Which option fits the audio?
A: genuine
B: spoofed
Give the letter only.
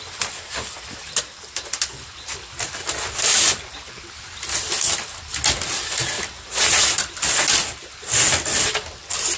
A